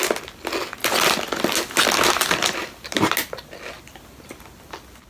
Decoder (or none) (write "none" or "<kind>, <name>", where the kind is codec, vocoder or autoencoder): none